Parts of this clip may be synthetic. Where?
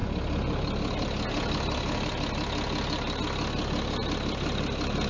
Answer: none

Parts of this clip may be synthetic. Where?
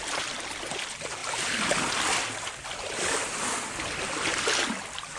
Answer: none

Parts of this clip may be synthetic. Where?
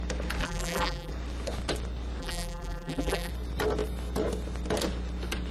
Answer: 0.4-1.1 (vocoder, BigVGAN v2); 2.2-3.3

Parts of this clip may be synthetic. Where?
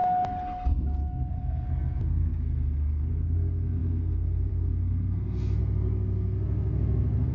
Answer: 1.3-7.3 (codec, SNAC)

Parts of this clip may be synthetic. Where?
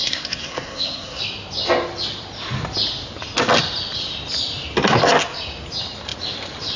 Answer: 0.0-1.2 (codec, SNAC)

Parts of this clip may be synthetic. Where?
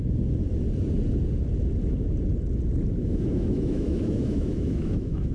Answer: 3.0-5.3 (autoencoder, DAC-VAE)